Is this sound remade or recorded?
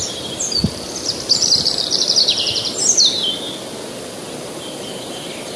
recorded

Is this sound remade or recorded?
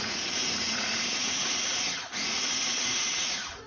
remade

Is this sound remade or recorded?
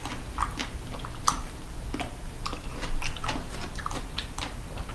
recorded